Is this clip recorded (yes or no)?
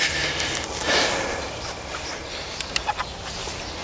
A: yes